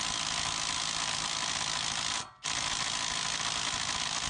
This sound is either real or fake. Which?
real